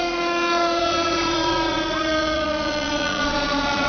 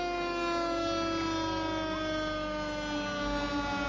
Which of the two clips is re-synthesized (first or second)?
first